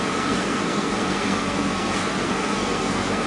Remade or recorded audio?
remade